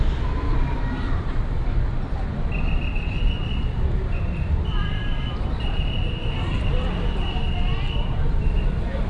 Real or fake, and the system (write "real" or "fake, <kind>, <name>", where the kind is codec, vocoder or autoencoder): fake, vocoder, BigVGAN v2